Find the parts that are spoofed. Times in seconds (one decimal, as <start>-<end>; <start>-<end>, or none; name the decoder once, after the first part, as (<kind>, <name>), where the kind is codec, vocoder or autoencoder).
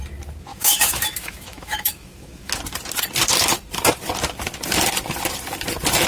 0.5-2.5 (autoencoder, DAC-VAE)